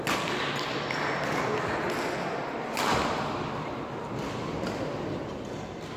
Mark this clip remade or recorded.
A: recorded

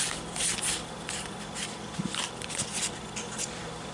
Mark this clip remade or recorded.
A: remade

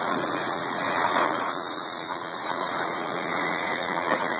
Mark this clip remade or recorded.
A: remade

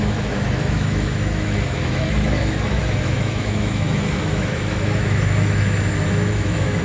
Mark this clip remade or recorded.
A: remade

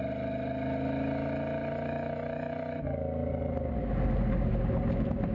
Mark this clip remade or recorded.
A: recorded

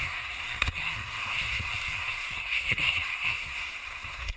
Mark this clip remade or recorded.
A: remade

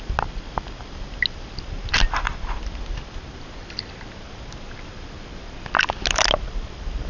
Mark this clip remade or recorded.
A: recorded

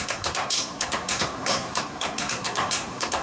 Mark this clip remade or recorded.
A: remade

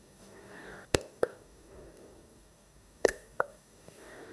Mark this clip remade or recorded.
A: remade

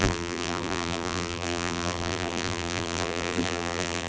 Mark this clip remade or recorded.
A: remade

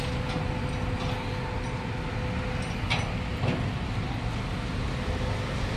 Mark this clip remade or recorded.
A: recorded